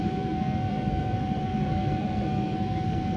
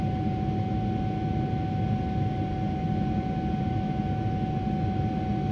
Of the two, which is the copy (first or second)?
first